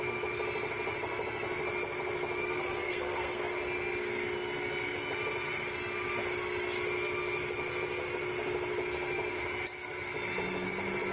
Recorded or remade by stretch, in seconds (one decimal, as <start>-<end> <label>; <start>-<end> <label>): 0.0-2.4 recorded; 2.4-3.4 remade; 3.4-11.1 recorded